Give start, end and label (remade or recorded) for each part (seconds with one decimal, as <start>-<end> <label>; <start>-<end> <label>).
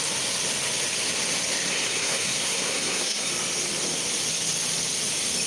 0.0-1.7 recorded; 1.7-3.3 remade; 3.3-5.5 recorded